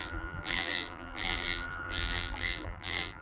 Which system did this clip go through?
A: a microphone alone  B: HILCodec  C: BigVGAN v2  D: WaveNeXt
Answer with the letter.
C